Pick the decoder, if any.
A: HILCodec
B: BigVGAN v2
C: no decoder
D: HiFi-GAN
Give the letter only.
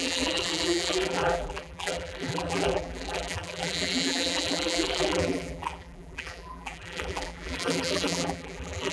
B